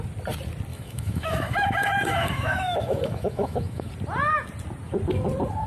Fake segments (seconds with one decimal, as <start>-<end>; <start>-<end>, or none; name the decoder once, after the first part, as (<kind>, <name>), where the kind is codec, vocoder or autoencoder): 0.7-3.9 (autoencoder, DAC-VAE)